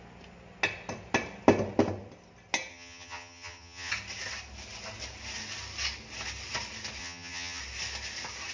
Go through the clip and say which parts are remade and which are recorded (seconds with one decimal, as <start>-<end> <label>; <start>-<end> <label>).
0.0-2.7 recorded; 2.7-3.9 remade; 3.9-7.0 recorded; 7.0-7.6 remade; 7.6-8.5 recorded